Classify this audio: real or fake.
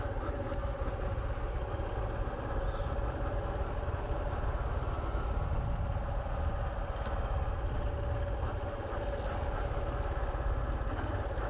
real